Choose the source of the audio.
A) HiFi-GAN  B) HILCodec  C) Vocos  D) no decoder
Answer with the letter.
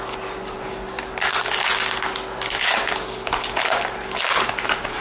D